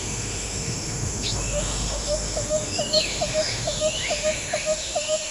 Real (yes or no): no